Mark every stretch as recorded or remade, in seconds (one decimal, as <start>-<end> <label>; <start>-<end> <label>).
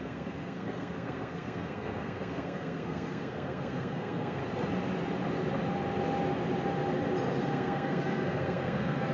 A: 0.0-4.4 remade; 4.4-7.4 recorded; 7.4-9.1 remade